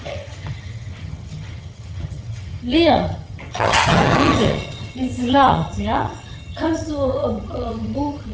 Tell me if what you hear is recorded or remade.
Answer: remade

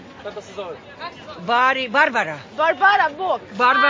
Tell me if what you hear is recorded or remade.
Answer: recorded